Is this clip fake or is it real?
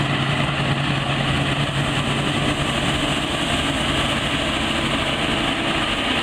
real